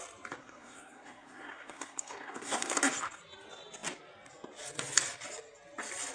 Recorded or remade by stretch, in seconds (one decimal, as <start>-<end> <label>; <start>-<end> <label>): 0.0-0.4 recorded; 0.4-2.8 remade; 2.8-6.1 recorded